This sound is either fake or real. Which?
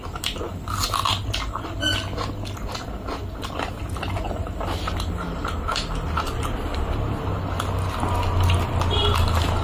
real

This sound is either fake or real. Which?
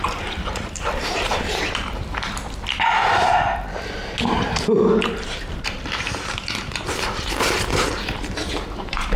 fake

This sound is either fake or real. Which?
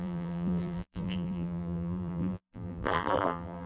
fake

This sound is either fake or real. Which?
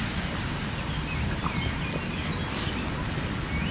real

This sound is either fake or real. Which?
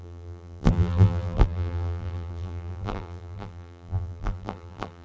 fake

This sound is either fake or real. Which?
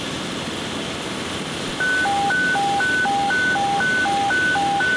real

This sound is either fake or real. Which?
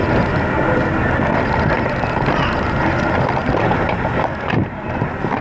real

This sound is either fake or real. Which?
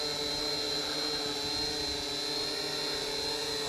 real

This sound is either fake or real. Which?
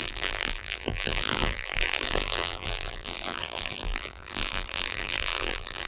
fake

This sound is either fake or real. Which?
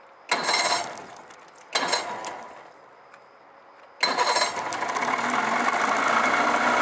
real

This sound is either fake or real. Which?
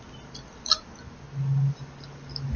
real